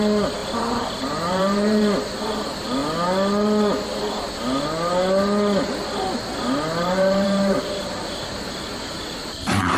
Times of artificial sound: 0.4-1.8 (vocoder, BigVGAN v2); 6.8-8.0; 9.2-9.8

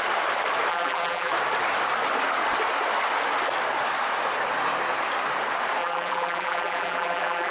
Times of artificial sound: 0.7-1.3 (vocoder, BigVGAN v2); 5.8-7.5

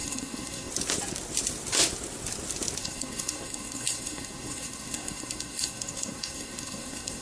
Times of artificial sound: 0.0-0.7 (codec, SNAC); 2.8-7.2

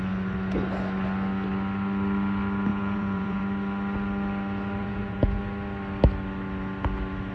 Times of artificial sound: 2.7-3.4 (vocoder, Vocos); 4.8-5.4

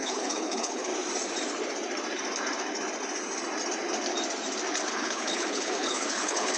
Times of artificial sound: 0.0-0.9 (codec, HILCodec); 4.9-6.6

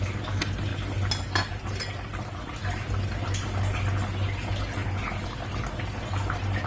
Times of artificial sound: none

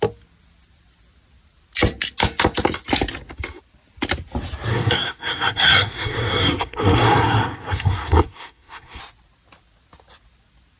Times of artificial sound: 4.7-9.0 (codec, SNAC)

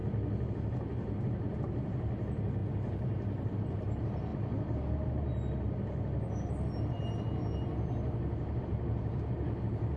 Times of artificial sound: 0.5-4.3 (vocoder, BigVGAN v2); 8.6-10.0